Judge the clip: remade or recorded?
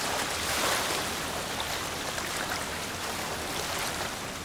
recorded